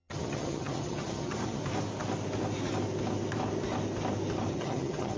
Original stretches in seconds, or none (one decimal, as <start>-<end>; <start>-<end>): 1.6-4.5